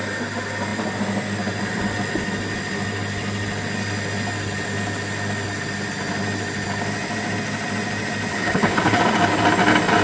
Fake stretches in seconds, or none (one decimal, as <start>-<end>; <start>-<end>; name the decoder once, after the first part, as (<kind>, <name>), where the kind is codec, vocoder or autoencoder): 8.3-9.0 (codec, HILCodec)